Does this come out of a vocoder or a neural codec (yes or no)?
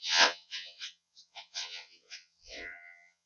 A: yes